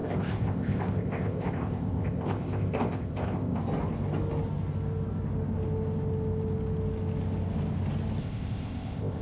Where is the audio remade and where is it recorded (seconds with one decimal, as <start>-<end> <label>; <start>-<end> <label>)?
0.0-3.6 remade; 3.6-8.2 recorded; 8.2-9.2 remade